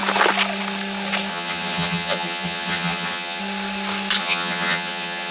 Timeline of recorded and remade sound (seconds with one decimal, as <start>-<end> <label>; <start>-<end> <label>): 0.0-1.3 recorded; 1.3-3.4 remade; 3.4-4.2 recorded; 4.2-5.3 remade